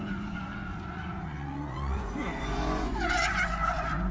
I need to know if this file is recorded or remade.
remade